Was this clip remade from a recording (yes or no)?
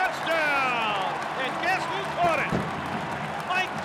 no